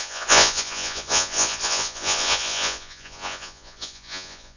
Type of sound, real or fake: fake